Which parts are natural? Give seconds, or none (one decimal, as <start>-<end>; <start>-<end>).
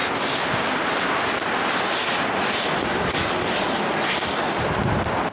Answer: 0.0-5.3